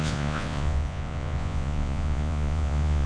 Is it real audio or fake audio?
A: fake